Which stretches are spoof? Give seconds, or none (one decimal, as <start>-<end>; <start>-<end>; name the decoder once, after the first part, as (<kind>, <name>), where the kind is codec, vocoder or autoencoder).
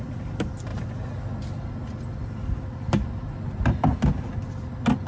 none